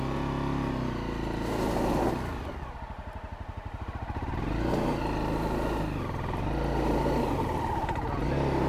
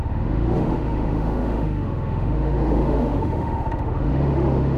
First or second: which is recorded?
first